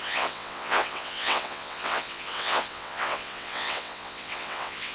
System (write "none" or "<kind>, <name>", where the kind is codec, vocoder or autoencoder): vocoder, WaveNeXt